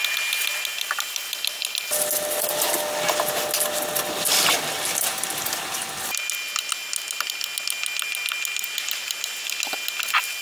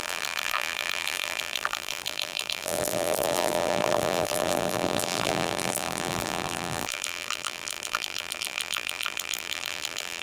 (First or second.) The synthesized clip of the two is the second